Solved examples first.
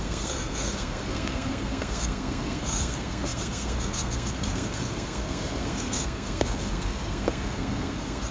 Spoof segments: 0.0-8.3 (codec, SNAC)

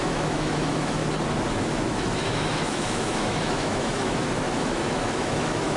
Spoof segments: 0.0-1.0 (autoencoder, DAC-VAE); 1.5-5.8

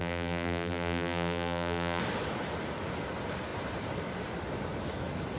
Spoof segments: 0.0-2.0 (vocoder, BigVGAN v2)

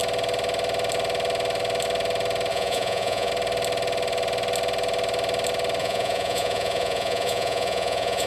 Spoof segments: 2.5-3.3 (vocoder, Vocos); 5.8-8.3